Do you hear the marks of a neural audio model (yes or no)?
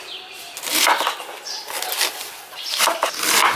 no